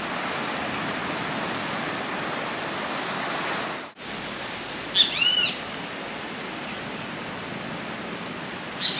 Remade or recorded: recorded